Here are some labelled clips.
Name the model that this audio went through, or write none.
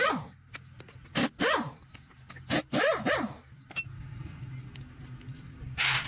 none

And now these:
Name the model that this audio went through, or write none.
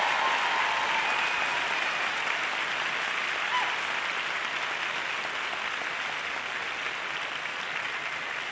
none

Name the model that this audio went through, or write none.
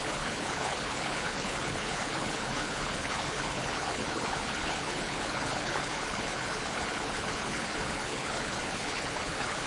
codec, HILCodec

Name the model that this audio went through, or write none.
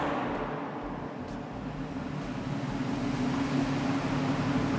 none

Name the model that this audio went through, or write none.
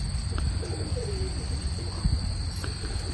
none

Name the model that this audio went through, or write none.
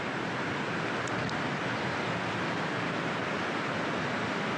none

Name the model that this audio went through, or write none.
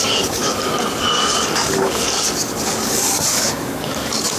codec, DAC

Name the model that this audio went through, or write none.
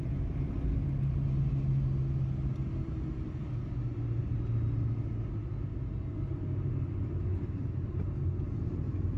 none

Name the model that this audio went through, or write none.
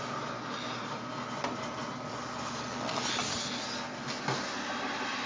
none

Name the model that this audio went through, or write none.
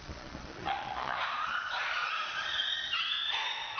vocoder, Vocos